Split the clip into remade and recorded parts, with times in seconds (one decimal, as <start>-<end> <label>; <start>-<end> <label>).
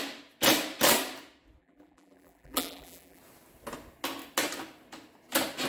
0.0-1.6 recorded; 1.6-3.2 remade; 3.2-5.7 recorded